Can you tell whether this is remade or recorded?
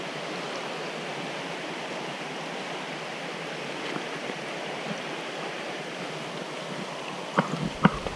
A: recorded